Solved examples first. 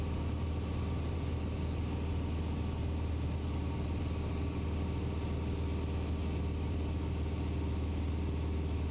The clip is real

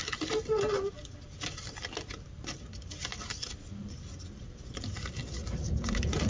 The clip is real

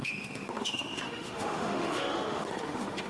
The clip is fake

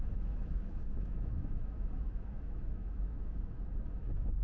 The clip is fake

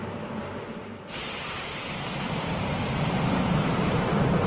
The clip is fake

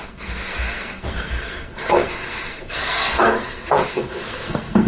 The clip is fake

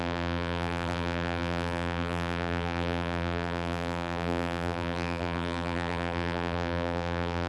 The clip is fake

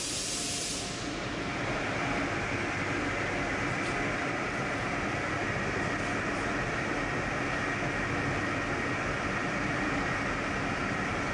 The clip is real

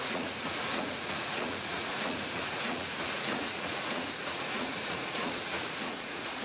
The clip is fake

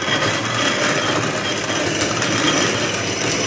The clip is real